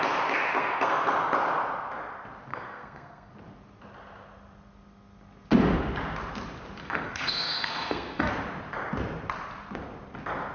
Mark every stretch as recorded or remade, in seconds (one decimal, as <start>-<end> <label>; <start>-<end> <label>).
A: 0.0-0.6 recorded; 0.6-1.1 remade; 1.1-2.5 recorded; 2.5-3.3 remade; 3.3-6.8 recorded; 6.8-8.3 remade; 8.3-10.5 recorded